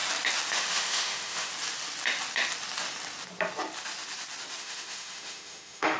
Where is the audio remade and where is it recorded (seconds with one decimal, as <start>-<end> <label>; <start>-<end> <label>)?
0.0-0.5 recorded; 0.5-1.5 remade; 1.5-4.6 recorded; 4.6-6.0 remade